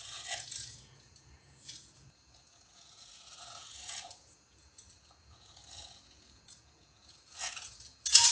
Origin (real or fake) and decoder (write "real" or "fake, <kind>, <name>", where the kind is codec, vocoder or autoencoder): fake, vocoder, Vocos